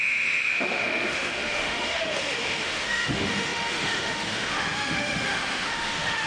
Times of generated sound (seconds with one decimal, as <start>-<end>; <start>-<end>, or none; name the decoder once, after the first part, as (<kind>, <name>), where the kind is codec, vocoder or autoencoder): 0.0-6.3 (autoencoder, DAC-VAE)

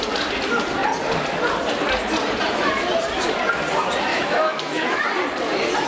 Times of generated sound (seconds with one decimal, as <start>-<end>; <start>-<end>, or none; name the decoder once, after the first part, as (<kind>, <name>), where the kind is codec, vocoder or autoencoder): 4.1-5.0 (autoencoder, DAC-VAE)

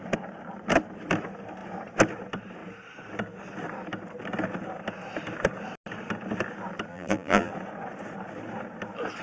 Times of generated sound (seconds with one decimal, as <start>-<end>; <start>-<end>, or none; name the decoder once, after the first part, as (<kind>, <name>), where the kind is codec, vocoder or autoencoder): 6.9-7.5 (vocoder, BigVGAN v2)

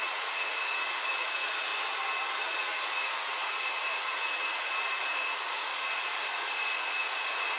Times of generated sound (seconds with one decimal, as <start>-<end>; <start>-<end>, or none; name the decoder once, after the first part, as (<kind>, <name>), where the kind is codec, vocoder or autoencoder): 0.0-1.7 (vocoder, Vocos); 2.4-7.6